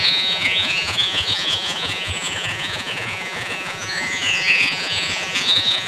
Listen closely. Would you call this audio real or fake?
fake